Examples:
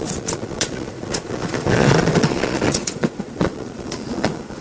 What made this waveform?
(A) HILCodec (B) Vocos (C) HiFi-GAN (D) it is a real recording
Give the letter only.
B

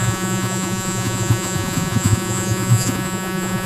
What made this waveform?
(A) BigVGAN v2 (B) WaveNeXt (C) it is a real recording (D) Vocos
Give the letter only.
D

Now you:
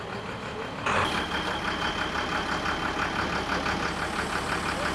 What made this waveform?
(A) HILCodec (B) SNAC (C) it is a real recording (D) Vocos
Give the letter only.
C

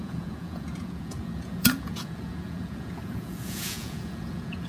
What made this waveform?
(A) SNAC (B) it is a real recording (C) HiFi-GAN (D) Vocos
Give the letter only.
D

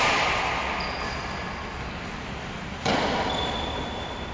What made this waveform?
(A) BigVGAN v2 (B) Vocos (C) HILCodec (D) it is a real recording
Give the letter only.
D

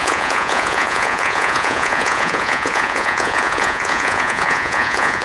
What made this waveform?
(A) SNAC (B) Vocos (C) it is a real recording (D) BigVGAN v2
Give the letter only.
B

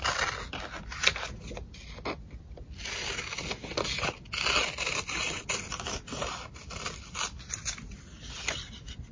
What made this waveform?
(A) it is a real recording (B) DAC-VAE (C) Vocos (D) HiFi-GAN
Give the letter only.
A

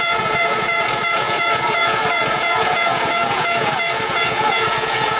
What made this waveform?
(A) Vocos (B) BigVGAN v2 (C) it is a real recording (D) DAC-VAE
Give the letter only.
A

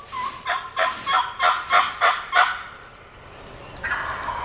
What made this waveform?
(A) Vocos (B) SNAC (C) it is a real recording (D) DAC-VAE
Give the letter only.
C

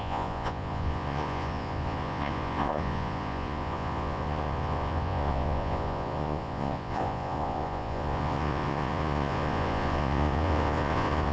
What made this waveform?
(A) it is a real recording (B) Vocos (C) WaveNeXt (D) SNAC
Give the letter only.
B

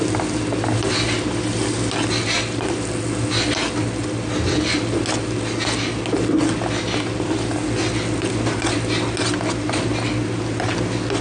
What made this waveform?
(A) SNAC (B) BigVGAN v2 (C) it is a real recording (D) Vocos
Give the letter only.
C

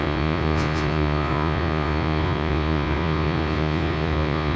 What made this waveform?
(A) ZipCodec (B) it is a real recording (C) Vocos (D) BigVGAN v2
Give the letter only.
C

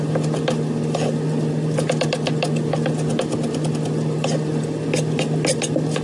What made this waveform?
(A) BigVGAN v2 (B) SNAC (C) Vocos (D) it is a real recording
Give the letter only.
D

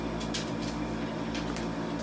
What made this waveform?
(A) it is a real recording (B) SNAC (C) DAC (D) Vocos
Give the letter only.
A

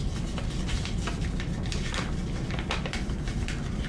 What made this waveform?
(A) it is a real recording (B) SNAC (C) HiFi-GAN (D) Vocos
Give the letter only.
A